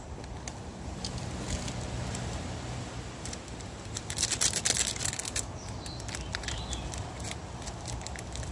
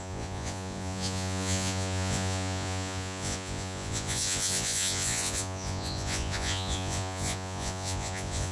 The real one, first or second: first